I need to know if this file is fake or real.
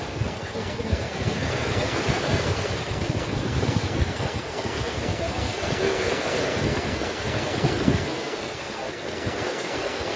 fake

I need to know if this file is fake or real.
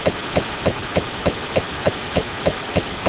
real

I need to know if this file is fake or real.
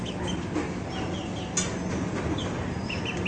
real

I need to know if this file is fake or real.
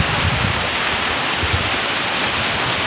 real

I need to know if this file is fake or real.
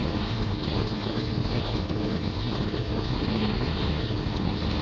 fake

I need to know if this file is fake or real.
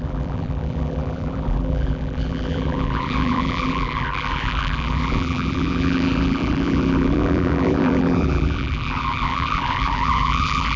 fake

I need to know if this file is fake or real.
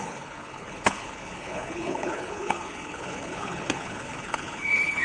fake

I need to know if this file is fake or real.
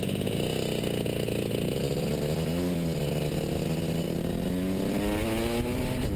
real